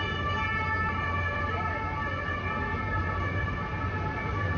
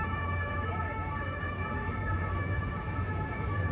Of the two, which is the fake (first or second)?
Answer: second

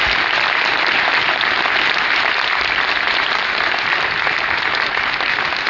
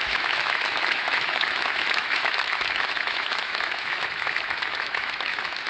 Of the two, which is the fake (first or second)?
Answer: second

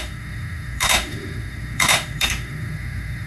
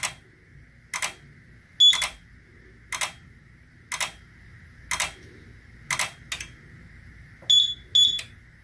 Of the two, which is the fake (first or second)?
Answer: first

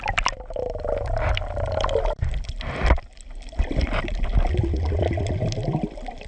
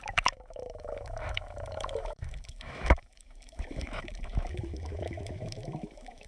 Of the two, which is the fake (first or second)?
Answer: second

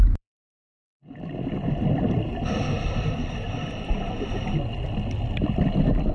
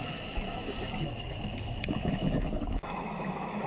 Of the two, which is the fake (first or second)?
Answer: second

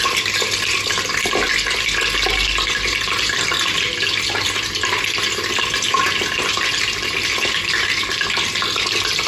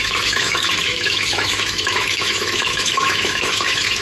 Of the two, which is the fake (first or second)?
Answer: second